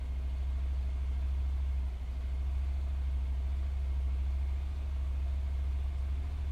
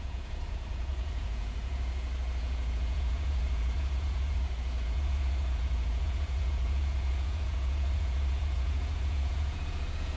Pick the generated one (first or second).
second